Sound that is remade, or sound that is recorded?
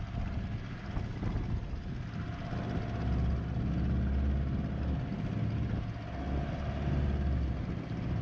recorded